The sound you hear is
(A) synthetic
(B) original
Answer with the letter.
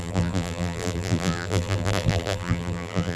A